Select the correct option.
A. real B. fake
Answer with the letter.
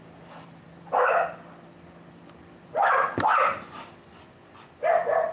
A